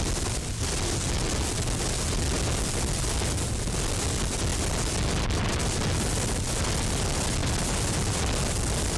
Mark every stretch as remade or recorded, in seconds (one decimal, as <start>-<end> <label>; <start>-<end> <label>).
0.0-9.0 recorded